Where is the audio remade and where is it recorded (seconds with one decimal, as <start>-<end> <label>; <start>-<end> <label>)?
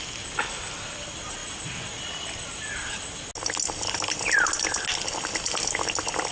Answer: 0.0-6.3 recorded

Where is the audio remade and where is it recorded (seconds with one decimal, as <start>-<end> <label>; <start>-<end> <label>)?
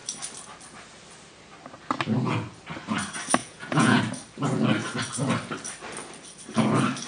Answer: 0.0-3.4 recorded; 3.4-4.0 remade; 4.0-7.1 recorded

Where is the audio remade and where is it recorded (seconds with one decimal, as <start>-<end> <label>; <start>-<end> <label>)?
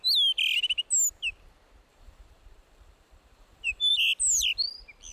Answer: 0.0-1.9 recorded; 1.9-3.9 remade; 3.9-5.1 recorded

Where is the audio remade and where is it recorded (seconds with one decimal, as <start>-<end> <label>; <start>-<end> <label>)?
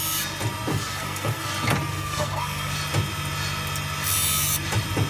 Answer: 0.0-0.7 recorded; 0.7-1.5 remade; 1.5-1.9 recorded; 1.9-2.7 remade; 2.7-5.1 recorded